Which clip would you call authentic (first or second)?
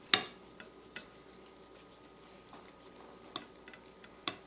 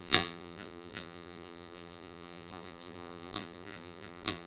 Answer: first